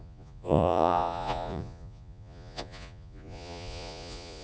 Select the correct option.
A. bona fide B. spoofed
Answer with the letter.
B